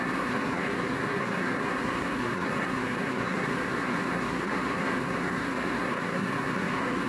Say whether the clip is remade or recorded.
remade